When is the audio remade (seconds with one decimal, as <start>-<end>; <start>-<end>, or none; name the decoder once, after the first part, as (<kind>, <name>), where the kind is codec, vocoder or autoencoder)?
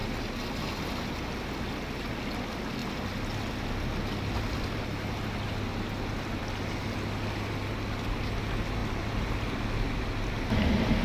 none